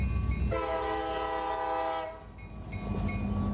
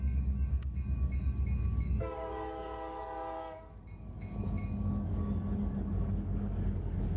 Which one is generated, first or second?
second